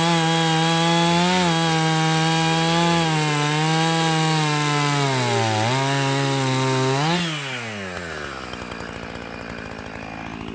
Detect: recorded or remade recorded